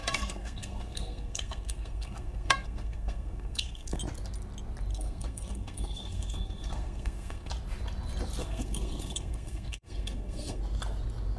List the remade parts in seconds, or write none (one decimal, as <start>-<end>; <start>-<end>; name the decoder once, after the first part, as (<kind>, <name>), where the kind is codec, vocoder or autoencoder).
0.0-4.0 (codec, SNAC); 4.9-7.5; 8.4-10.6